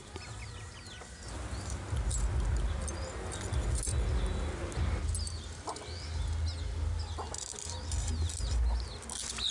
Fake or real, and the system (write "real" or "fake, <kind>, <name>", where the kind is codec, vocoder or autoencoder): real